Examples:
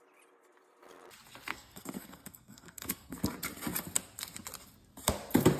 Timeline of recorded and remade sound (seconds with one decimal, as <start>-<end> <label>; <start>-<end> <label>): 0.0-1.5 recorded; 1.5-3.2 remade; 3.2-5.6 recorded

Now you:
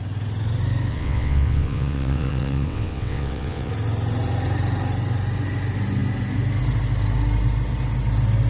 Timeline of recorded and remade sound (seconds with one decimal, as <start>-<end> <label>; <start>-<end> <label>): 0.0-0.9 recorded; 0.9-3.7 remade; 3.7-8.5 recorded

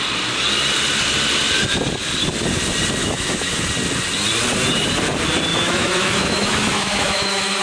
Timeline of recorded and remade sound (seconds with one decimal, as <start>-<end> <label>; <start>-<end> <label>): 0.0-3.0 recorded; 3.0-3.7 remade; 3.7-5.5 recorded; 5.5-7.6 remade

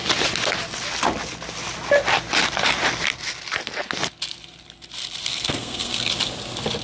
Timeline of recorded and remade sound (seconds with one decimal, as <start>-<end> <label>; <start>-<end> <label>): 0.0-5.3 recorded; 5.3-6.1 remade; 6.1-6.8 recorded

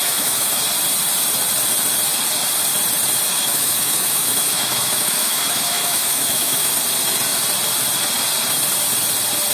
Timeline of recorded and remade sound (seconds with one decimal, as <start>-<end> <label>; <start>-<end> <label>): 0.0-0.6 remade; 0.6-3.3 recorded; 3.3-6.7 remade; 6.7-9.5 recorded

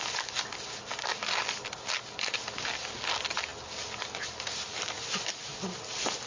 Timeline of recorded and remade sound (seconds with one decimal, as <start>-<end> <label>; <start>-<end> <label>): 0.0-6.3 recorded